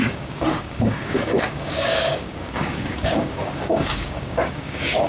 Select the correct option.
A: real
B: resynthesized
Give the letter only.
B